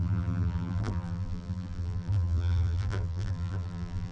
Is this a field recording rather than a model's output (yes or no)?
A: no